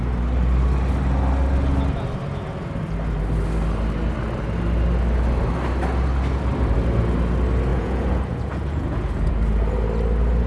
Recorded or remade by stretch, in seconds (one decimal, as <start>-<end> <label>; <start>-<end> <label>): 0.0-7.7 recorded; 7.7-9.3 remade; 9.3-10.5 recorded